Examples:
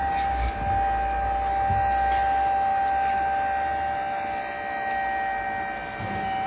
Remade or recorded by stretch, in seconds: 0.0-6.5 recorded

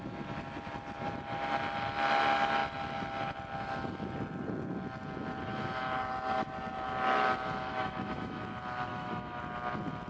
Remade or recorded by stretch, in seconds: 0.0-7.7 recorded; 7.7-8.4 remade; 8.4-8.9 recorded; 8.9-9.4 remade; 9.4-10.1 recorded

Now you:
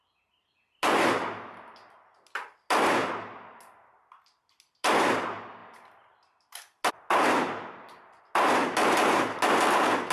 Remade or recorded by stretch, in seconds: 0.0-10.1 recorded